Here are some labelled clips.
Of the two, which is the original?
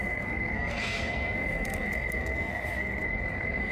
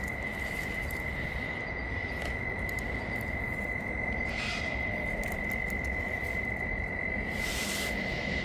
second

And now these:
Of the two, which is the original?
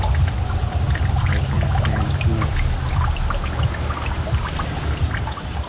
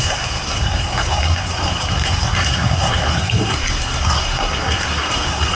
first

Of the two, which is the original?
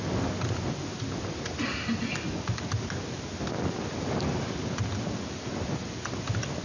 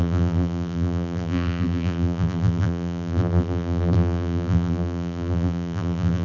first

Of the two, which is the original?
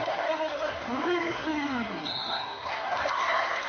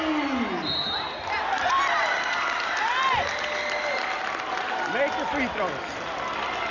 second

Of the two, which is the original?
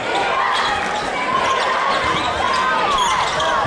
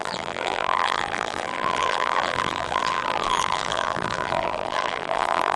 first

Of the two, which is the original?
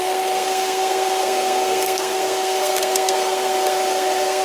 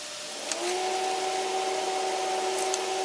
second